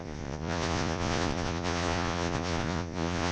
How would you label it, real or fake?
fake